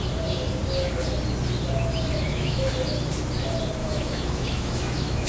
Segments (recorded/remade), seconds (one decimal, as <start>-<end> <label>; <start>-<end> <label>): 0.0-2.1 recorded; 2.1-2.7 remade; 2.7-3.8 recorded; 3.8-5.3 remade